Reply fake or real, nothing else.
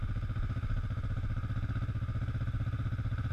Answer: real